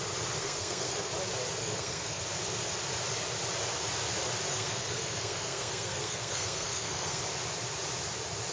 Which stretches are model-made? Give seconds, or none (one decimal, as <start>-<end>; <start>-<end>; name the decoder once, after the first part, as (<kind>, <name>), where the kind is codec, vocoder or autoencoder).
0.4-1.1 (codec, SNAC); 1.6-2.2; 4.5-7.2